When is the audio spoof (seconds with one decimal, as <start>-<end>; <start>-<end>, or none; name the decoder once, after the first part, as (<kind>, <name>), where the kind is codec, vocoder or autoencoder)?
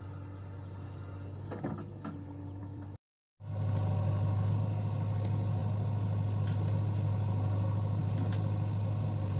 2.6-3.2 (vocoder, BigVGAN v2)